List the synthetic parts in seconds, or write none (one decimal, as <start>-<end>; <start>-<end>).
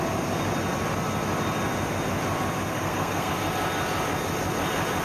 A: 2.7-3.3